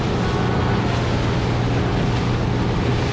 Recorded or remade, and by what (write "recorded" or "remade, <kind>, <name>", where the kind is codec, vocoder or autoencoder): recorded